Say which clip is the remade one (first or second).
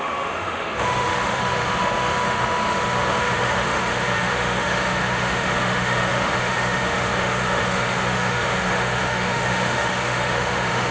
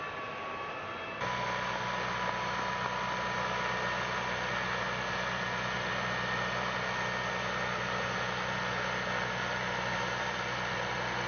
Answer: first